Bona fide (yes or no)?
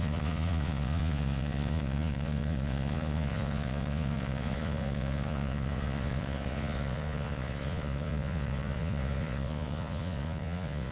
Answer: no